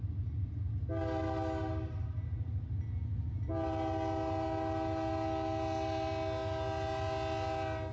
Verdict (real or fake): real